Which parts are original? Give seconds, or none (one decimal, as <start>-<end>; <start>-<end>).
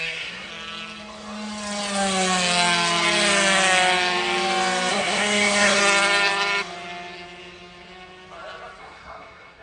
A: 0.5-4.9; 5.8-8.8